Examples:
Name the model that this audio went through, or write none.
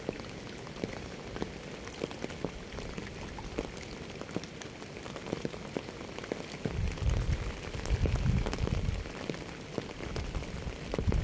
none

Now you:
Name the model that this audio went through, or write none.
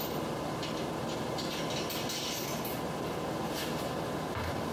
none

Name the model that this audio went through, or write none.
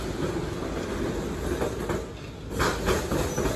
none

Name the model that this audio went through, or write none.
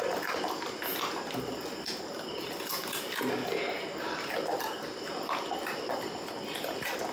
none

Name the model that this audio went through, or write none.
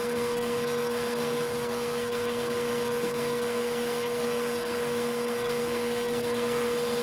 codec, SNAC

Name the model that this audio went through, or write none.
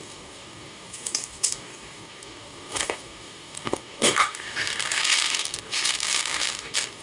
codec, DAC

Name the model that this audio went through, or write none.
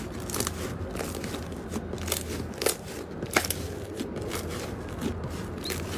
none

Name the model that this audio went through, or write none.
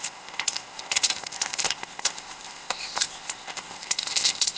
codec, ZipCodec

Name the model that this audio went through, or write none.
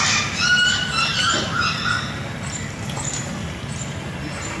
none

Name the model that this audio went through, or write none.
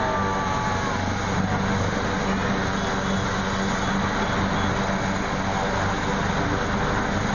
none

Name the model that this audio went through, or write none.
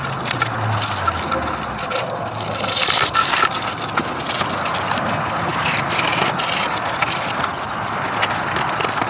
none